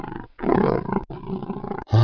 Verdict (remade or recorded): remade